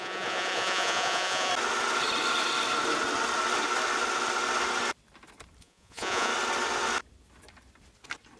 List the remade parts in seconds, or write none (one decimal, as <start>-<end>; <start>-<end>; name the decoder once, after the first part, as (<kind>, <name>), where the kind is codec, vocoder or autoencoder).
0.0-1.5 (vocoder, Vocos); 5.6-6.3